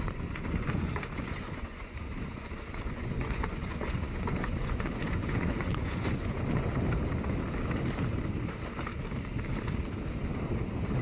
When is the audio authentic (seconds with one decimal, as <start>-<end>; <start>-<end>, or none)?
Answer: 6.7-11.0